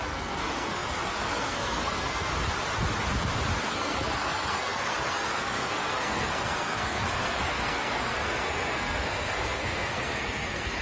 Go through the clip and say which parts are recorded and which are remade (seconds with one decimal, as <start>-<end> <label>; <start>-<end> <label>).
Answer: 0.0-2.3 remade; 2.3-3.7 recorded; 3.7-10.8 remade